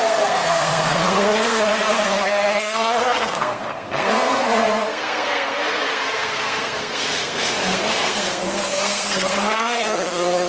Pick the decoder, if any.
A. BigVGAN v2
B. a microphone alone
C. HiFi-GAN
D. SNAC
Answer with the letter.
D